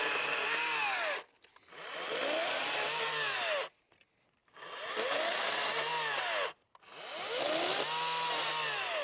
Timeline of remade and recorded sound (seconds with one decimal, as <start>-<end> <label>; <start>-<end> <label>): 0.0-2.4 recorded; 2.4-3.0 remade; 3.0-4.4 recorded; 4.4-5.4 remade; 5.4-9.0 recorded